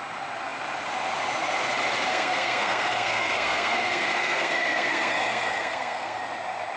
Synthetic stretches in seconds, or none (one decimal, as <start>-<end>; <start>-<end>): 2.1-6.2